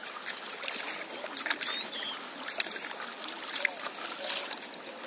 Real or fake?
real